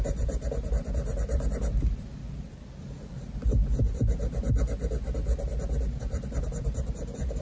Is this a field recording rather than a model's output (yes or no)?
yes